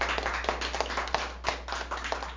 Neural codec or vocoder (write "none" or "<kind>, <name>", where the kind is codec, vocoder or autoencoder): none